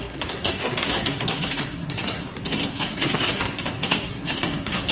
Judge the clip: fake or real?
fake